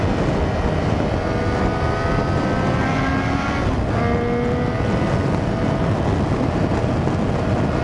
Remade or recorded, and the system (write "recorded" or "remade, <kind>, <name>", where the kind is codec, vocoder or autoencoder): recorded